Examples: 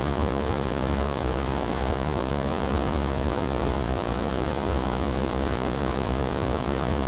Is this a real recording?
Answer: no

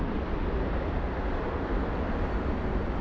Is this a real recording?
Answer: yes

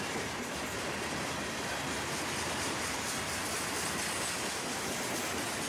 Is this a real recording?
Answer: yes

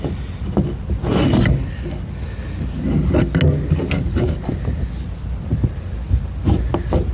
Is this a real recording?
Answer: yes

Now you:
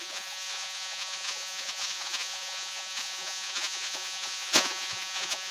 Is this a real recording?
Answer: no